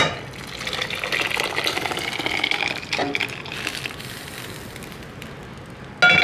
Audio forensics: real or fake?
real